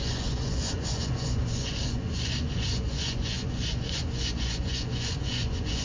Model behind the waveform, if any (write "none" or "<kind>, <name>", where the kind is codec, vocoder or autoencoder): vocoder, Vocos